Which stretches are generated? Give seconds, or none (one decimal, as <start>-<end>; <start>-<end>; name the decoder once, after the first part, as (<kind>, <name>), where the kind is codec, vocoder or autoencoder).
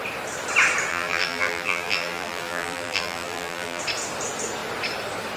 0.9-3.8 (vocoder, BigVGAN v2)